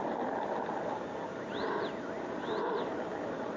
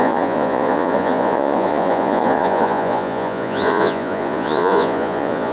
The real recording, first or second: first